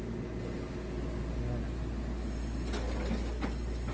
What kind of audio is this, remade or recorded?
recorded